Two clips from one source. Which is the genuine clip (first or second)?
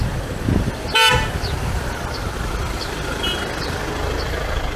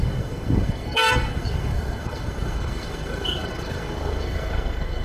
first